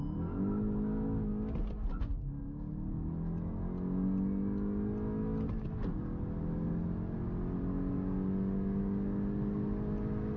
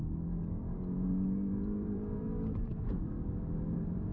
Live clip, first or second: first